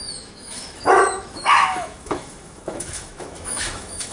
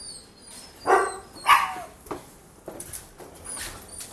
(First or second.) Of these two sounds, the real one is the second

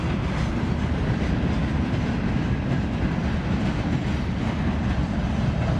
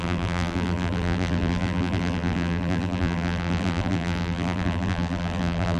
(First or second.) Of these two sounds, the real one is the first